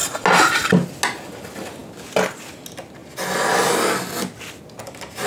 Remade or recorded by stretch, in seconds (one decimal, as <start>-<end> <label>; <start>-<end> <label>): 0.0-5.3 recorded

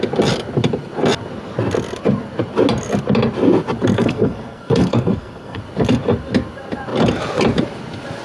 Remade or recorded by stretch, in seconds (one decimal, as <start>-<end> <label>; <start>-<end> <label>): 0.0-3.9 recorded; 3.9-5.6 remade; 5.6-8.2 recorded

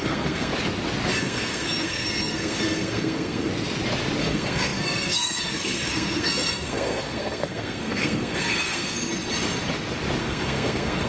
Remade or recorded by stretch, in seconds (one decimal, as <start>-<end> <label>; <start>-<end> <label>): 0.0-0.5 remade; 0.5-1.2 recorded; 1.2-3.5 remade; 3.5-4.2 recorded; 4.2-9.1 remade; 9.1-10.2 recorded; 10.2-11.1 remade

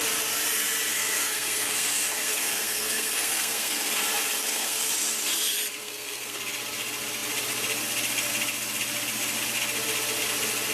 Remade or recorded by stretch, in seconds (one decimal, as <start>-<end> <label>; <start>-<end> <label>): 0.0-0.9 recorded; 0.9-3.9 remade; 3.9-4.4 recorded; 4.4-4.9 remade; 4.9-5.8 recorded; 5.8-6.4 remade; 6.4-10.7 recorded

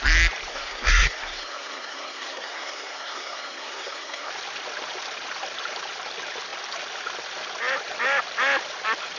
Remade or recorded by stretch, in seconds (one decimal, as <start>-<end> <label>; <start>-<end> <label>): 0.0-0.5 recorded; 0.5-4.3 remade; 4.3-9.2 recorded

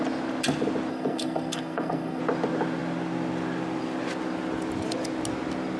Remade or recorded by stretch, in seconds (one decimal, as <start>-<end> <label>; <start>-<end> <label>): 0.0-0.9 recorded; 0.9-2.2 remade; 2.2-5.8 recorded

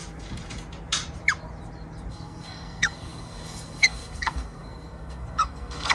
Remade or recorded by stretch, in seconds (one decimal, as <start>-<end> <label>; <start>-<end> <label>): 0.0-2.1 recorded; 2.1-5.9 remade